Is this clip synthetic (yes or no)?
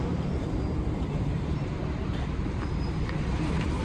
yes